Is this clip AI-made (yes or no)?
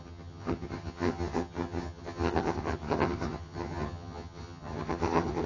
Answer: yes